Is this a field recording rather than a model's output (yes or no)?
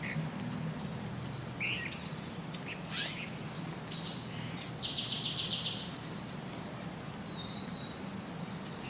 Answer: yes